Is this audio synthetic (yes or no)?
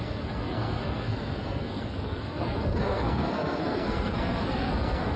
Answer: yes